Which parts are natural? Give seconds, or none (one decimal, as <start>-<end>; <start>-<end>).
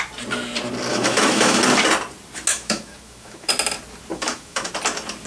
0.0-0.9; 1.6-2.5; 3.5-4.1; 4.7-5.3